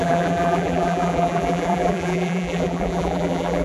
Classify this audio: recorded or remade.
remade